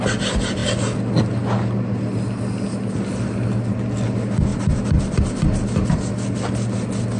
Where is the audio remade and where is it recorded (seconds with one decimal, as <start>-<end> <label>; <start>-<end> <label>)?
0.0-7.2 recorded